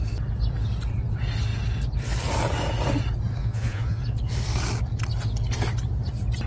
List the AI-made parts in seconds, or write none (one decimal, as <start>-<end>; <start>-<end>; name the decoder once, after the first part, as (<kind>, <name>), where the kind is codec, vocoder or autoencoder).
3.4-4.0 (vocoder, Vocos)